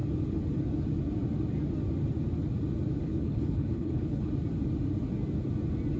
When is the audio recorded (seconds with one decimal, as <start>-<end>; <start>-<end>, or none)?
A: 0.0-3.0; 4.3-6.0

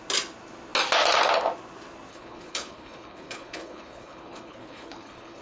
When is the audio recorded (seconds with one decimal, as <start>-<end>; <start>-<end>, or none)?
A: 0.0-2.1

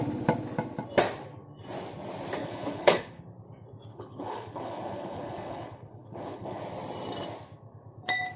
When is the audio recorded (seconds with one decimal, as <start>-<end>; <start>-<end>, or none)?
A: 0.0-2.4; 3.2-3.9; 6.6-8.4

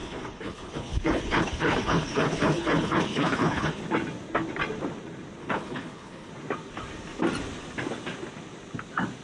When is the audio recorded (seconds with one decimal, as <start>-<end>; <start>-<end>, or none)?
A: 3.8-5.4; 6.3-9.2

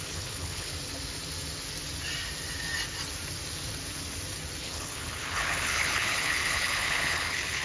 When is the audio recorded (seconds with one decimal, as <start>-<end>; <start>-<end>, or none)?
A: 0.7-4.6